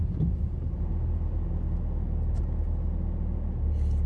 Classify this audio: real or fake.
real